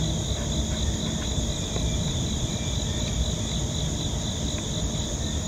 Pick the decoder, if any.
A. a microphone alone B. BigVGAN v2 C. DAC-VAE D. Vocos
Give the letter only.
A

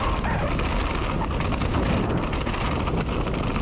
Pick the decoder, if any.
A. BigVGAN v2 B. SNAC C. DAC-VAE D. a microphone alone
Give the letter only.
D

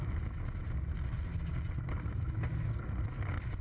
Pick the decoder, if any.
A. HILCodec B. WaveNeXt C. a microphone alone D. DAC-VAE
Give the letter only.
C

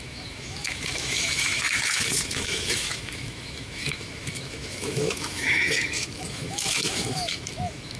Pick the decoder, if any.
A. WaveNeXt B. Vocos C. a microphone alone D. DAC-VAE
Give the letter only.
D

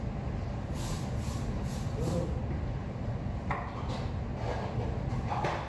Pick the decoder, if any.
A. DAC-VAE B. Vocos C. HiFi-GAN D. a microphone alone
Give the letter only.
D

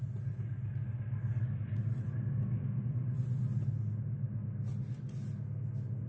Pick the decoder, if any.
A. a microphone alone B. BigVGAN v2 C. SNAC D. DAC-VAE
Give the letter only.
A